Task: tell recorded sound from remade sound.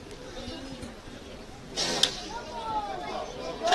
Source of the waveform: recorded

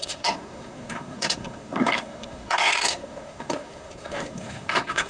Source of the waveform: remade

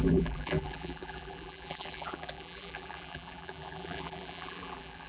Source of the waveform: remade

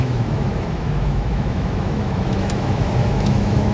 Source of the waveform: remade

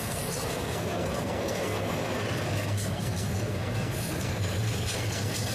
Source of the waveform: remade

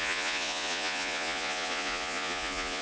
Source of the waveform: remade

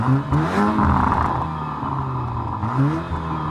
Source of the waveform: recorded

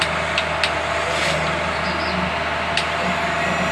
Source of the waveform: recorded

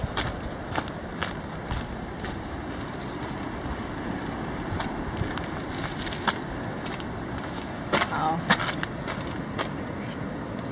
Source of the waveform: recorded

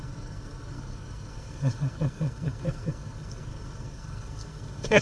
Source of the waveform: remade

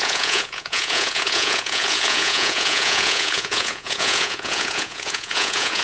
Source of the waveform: remade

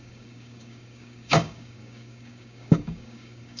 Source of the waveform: remade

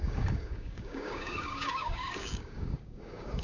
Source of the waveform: remade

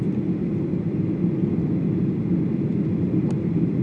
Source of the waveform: recorded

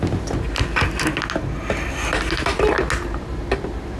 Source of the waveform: recorded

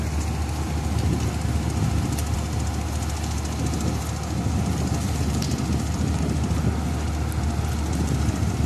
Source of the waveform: recorded